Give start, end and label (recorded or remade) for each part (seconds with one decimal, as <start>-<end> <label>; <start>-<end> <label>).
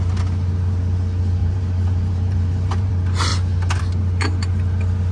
0.0-1.4 recorded; 1.4-2.9 remade; 2.9-5.1 recorded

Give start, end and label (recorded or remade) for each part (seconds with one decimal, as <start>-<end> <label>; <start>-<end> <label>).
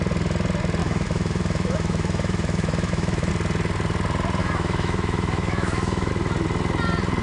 0.0-0.8 recorded; 0.8-3.3 remade; 3.3-4.4 recorded; 4.4-6.1 remade; 6.1-7.2 recorded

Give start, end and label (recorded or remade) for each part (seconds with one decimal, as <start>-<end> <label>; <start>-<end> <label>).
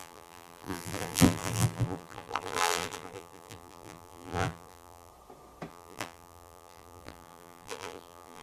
0.0-5.1 remade; 5.1-5.7 recorded; 5.7-8.4 remade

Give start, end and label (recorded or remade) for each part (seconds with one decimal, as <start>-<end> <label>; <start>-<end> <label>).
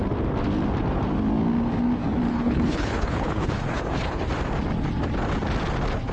0.0-2.3 recorded; 2.3-4.3 remade; 4.3-6.1 recorded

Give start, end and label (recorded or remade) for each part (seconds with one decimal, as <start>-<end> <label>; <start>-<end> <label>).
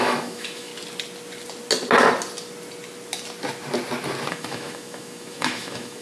0.0-0.7 remade; 0.7-4.3 recorded; 4.3-6.0 remade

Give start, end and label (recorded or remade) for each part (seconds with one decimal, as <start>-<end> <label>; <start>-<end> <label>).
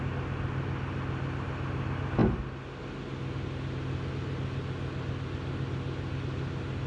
0.0-6.9 recorded